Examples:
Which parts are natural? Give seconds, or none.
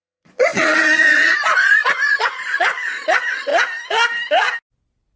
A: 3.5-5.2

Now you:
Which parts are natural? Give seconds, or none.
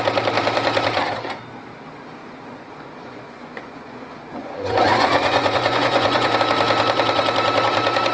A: 0.0-2.2; 6.4-8.1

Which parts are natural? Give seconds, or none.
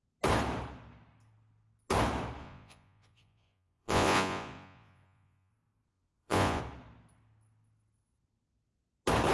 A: 0.0-2.4; 5.5-5.9; 6.6-9.3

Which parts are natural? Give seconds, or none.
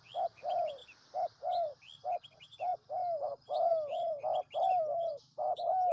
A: 0.0-5.9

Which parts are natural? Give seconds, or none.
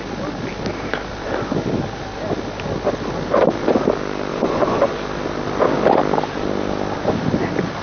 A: 0.0-4.3; 4.9-7.8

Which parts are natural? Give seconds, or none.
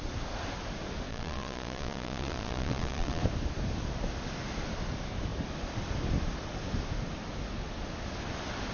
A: 0.0-1.1; 3.2-8.7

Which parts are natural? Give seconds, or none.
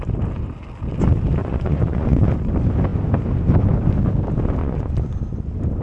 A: 0.0-1.4; 2.4-4.6; 5.2-5.8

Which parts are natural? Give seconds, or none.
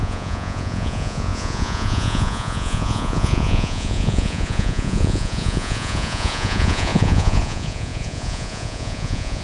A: none